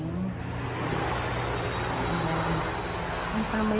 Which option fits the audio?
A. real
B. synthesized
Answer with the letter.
A